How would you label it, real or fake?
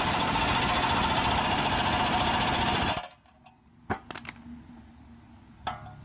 real